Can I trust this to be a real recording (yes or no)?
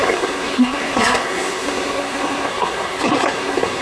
no